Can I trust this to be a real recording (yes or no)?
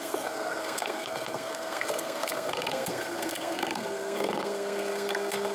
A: no